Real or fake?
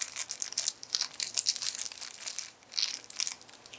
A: real